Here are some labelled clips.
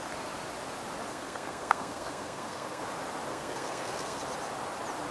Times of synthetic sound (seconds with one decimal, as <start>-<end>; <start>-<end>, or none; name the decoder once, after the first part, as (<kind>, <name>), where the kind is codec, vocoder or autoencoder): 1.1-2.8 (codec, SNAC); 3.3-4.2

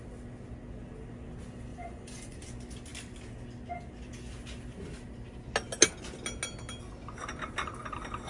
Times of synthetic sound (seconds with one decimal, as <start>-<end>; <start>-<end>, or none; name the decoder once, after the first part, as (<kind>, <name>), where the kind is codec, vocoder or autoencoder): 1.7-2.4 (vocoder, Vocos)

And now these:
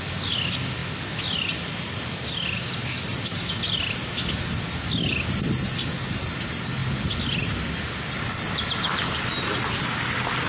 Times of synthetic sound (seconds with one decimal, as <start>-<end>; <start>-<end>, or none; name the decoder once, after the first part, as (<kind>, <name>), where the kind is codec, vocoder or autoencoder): none

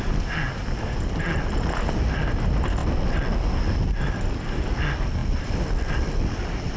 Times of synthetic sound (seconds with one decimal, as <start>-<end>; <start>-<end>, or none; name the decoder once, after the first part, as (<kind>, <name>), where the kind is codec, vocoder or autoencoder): none